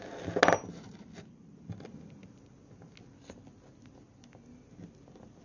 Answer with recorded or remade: recorded